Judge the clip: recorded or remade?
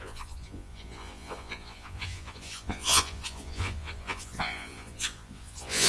remade